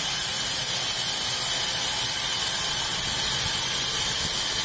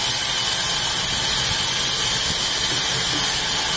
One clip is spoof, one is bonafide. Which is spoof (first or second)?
first